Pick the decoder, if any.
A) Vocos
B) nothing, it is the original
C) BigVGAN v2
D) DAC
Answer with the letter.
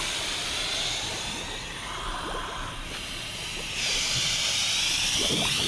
B